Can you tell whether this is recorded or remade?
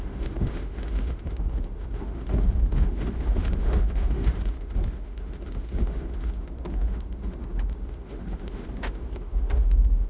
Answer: remade